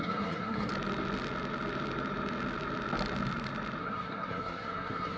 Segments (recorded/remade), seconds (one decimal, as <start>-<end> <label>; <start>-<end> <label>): 0.0-0.7 remade; 0.7-3.8 recorded; 3.8-5.2 remade